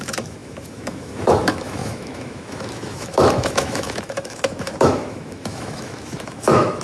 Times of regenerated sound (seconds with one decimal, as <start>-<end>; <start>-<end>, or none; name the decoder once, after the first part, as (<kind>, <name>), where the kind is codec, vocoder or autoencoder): 0.0-6.8 (autoencoder, DAC-VAE)